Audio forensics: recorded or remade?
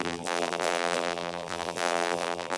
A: remade